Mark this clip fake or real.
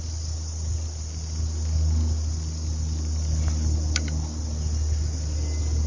real